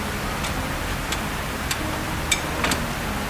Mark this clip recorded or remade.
recorded